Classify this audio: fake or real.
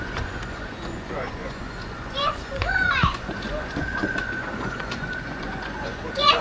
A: fake